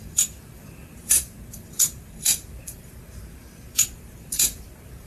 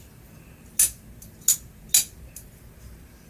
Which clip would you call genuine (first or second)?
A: second